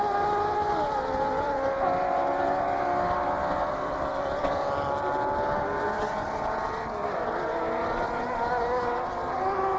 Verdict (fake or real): real